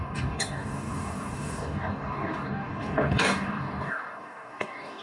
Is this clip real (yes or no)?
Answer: no